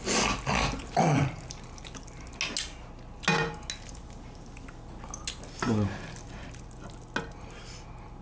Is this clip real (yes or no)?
yes